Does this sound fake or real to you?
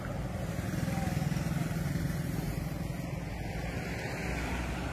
real